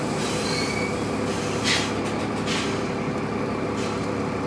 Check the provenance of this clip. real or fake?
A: real